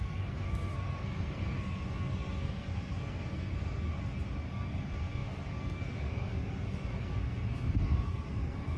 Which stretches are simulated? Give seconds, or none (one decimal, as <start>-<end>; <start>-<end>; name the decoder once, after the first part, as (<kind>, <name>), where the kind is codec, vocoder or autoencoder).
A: 0.0-3.9 (codec, SNAC); 4.5-8.8